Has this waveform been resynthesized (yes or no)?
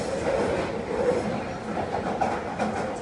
no